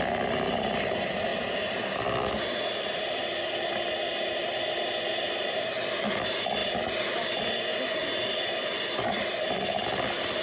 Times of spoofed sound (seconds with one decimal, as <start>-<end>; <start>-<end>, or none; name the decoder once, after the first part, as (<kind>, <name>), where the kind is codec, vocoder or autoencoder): none

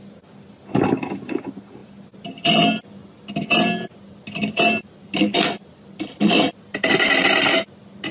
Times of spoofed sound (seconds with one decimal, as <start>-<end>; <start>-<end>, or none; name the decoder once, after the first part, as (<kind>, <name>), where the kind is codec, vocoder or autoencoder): none

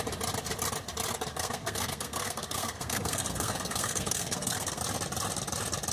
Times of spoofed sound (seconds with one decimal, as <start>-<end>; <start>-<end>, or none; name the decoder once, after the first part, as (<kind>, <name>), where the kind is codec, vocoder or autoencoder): 1.3-4.8 (codec, SNAC)

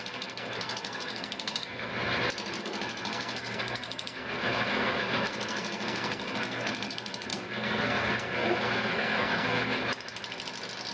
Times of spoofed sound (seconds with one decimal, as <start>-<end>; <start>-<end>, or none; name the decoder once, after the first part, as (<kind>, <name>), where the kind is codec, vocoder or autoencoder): 0.0-1.9 (codec, SNAC); 2.6-9.8

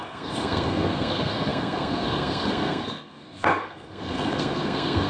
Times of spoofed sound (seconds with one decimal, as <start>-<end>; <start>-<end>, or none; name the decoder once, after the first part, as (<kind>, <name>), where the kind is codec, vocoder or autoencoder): 0.0-5.1 (codec, SNAC)

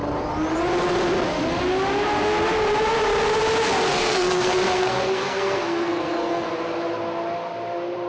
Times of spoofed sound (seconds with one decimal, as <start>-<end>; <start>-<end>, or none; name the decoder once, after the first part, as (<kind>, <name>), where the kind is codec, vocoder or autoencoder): 3.9-6.5 (codec, SNAC)